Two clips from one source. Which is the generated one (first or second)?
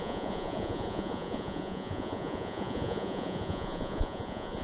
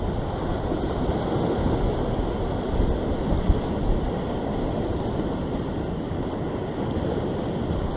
first